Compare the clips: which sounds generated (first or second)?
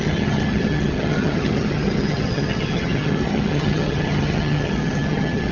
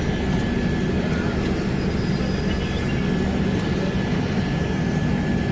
first